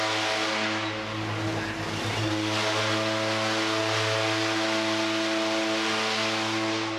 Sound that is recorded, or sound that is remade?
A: recorded